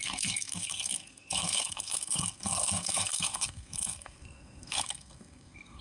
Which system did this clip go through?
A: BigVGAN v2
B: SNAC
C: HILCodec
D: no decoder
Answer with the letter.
B